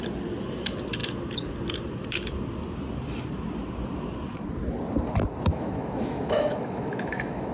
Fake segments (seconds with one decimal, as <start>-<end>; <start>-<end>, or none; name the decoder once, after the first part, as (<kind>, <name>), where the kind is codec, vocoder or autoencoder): 5.5-7.5 (autoencoder, DAC-VAE)